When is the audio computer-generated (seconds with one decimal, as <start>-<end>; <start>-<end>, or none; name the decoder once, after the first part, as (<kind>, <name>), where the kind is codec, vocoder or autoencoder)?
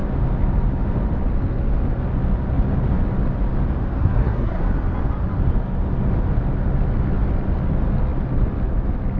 4.0-4.6 (codec, SNAC)